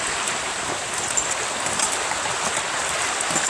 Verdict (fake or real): real